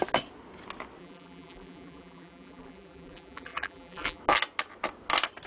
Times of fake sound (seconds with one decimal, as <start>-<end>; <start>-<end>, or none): 1.0-4.2